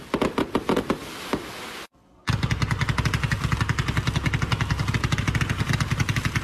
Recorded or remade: recorded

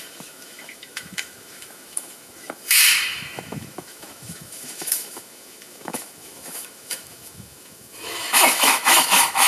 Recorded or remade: remade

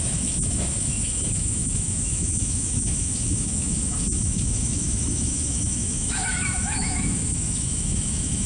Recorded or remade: remade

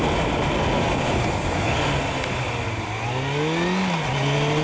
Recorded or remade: recorded